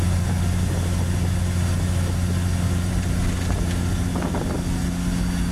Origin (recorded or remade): recorded